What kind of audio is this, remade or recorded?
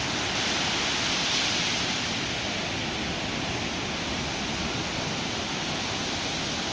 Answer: recorded